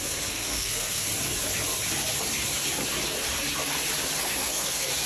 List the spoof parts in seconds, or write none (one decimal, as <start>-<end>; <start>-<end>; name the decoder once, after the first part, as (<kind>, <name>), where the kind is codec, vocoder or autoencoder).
0.0-1.1 (codec, SNAC); 4.2-5.1